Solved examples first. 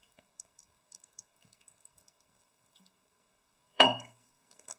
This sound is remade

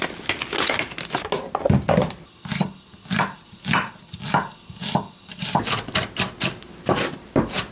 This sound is recorded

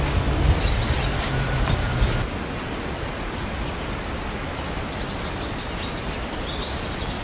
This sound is recorded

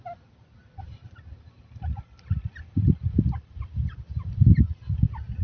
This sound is recorded